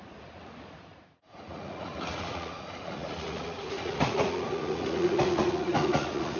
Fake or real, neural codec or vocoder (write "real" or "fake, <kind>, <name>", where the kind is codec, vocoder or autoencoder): fake, vocoder, Vocos